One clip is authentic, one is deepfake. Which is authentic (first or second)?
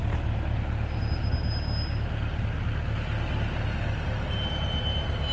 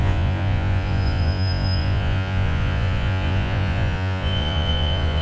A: first